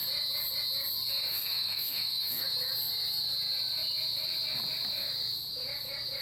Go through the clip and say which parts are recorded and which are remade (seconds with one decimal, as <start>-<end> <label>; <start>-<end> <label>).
0.0-1.3 recorded; 1.3-2.5 remade; 2.5-6.2 recorded